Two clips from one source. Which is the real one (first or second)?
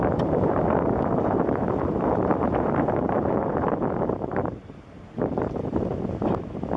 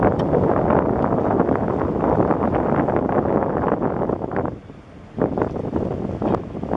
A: second